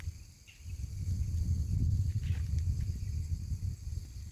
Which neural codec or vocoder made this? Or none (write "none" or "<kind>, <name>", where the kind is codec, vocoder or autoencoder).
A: none